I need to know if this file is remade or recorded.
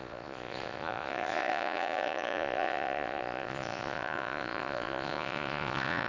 remade